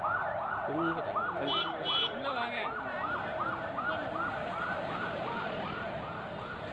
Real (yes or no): yes